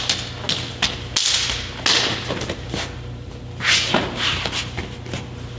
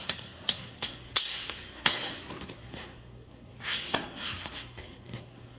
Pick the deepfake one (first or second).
second